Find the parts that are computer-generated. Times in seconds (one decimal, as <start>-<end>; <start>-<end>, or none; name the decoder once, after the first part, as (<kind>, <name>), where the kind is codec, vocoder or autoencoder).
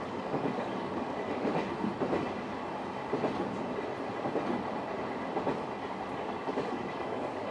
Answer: 0.0-1.6 (codec, DAC); 6.1-7.5